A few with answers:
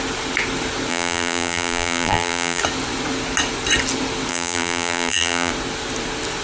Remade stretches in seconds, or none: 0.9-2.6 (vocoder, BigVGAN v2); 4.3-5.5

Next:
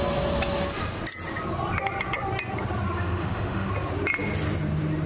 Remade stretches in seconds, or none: 3.0-3.7 (autoencoder, DAC-VAE)

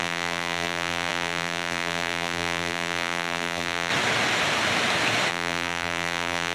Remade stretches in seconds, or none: 0.0-3.9 (vocoder, BigVGAN v2); 5.3-6.5

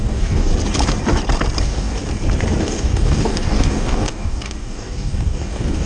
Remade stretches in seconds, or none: 0.0-0.5 (codec, DAC); 1.6-2.0; 2.6-5.9

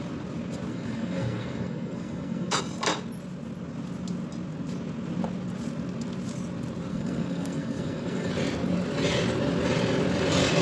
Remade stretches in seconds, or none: 0.7-2.6 (codec, SNAC); 6.9-8.3

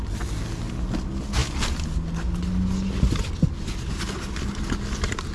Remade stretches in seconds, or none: none

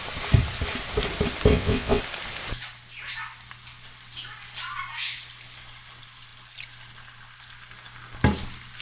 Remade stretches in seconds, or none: 1.5-2.0 (vocoder, WaveNeXt)

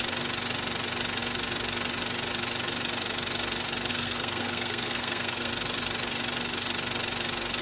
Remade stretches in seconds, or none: 3.9-5.5 (codec, SNAC)